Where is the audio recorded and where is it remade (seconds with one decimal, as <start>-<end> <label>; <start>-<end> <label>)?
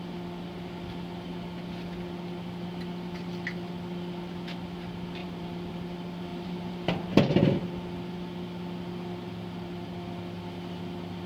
0.0-5.2 recorded; 5.2-5.8 remade; 5.8-6.3 recorded; 6.3-7.3 remade; 7.3-11.3 recorded